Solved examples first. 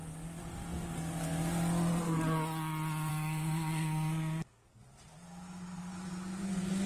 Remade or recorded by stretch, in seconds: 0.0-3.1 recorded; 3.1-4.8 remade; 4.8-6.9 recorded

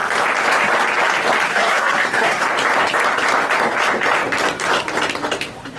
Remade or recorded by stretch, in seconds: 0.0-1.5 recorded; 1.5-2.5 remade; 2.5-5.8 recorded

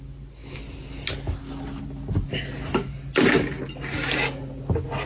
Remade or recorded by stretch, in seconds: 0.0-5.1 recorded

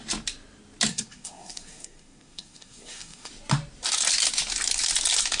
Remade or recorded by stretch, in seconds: 0.0-0.9 recorded; 0.9-3.3 remade; 3.3-5.4 recorded

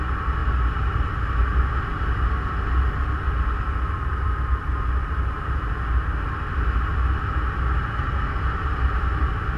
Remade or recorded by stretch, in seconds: 0.0-7.9 recorded; 7.9-8.4 remade; 8.4-9.6 recorded